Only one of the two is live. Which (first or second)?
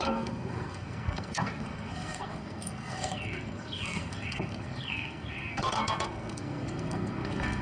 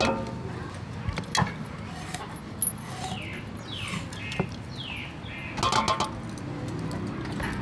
second